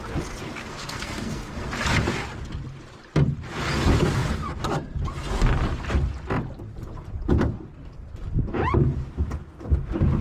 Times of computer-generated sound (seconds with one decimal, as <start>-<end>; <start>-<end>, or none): 0.6-1.7